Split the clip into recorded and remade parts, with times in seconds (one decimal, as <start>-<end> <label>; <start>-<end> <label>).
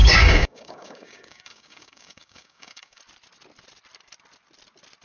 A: 0.0-3.0 remade; 3.0-5.0 recorded